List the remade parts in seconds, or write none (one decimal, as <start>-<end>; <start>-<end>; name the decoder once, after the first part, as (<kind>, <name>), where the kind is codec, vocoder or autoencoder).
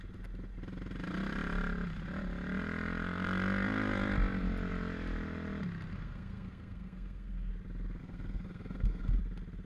5.9-7.5 (codec, SNAC); 8.0-9.2